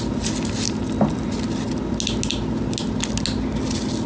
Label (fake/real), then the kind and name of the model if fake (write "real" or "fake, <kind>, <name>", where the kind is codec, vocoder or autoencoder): real